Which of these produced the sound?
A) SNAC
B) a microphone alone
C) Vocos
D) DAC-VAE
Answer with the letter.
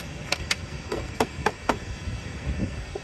A